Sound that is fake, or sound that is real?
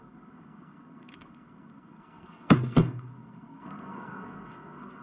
fake